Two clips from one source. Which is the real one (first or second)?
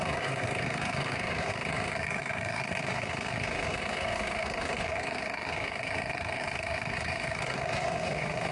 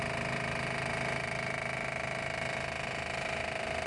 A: second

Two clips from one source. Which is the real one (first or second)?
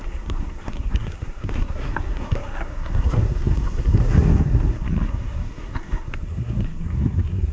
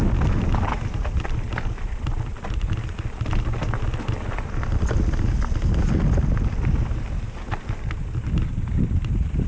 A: second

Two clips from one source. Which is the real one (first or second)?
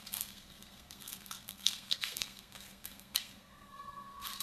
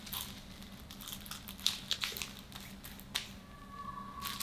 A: second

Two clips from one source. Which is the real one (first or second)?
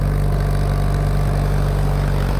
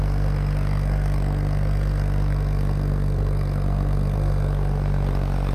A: first